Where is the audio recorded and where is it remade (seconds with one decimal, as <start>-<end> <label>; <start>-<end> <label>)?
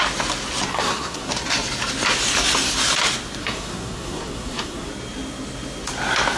0.0-0.7 recorded; 0.7-1.3 remade; 1.3-3.4 recorded; 3.4-4.9 remade; 4.9-6.4 recorded